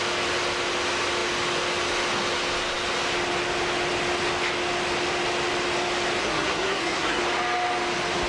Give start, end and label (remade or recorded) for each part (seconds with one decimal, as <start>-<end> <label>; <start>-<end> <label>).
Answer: 0.0-6.2 recorded; 6.2-7.2 remade; 7.2-8.3 recorded